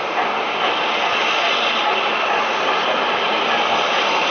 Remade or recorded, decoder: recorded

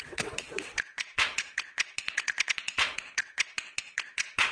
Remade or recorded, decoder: remade, vocoder, WaveNeXt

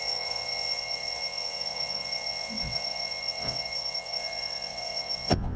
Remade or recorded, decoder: remade, vocoder, WaveNeXt